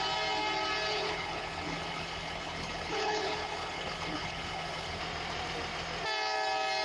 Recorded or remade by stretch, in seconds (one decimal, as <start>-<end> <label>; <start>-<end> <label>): 0.0-0.9 recorded; 0.9-5.0 remade; 5.0-6.8 recorded